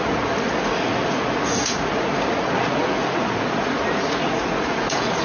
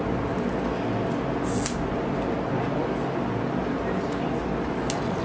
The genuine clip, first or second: second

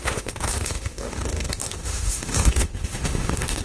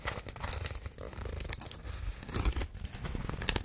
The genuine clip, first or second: second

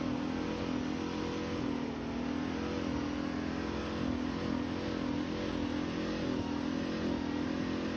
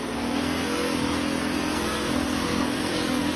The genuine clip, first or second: first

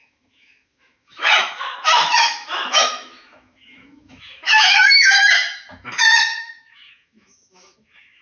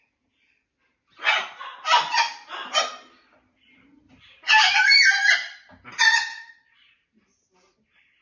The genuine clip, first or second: second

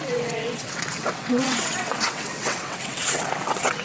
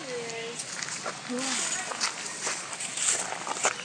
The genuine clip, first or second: second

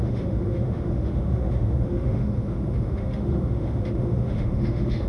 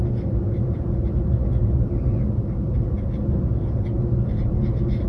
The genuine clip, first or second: second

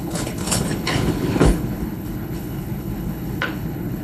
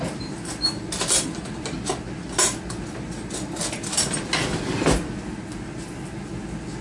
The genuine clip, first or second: second